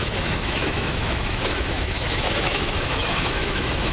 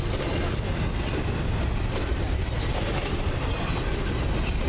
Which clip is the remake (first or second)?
first